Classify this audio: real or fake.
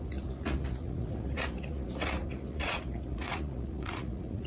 fake